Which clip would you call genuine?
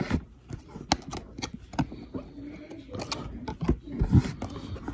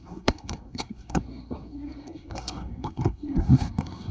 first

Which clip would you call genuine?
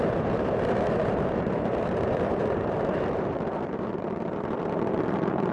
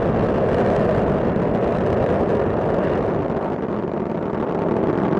second